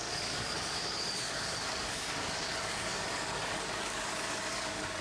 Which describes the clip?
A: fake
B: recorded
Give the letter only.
A